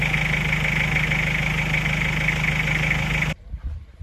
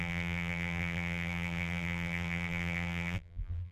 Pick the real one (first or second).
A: first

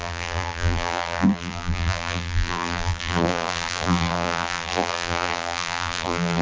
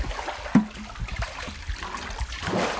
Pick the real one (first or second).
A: second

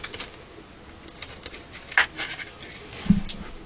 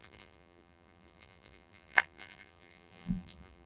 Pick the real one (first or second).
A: first